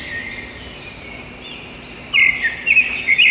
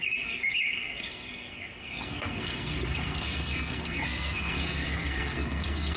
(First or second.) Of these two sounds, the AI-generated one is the second